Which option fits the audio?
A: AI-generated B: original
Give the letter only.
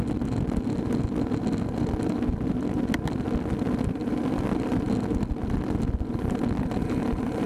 B